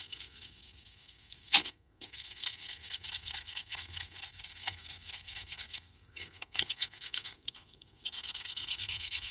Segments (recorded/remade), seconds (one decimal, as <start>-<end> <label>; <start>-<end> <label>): 0.0-9.3 remade